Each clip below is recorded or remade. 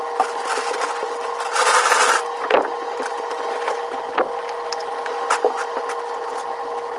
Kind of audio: recorded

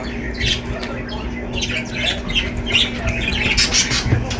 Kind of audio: recorded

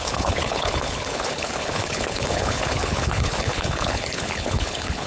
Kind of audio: remade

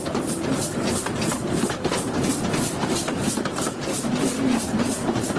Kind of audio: remade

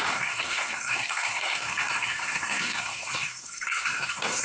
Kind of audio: remade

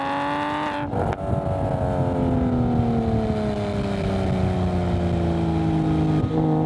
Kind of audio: recorded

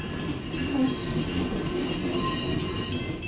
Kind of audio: recorded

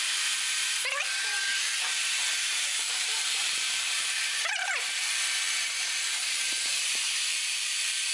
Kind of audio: remade